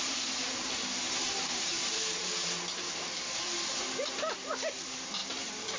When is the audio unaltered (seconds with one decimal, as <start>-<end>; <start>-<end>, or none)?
none